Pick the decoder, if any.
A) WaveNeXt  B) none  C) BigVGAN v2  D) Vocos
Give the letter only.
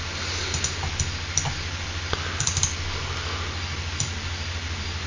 B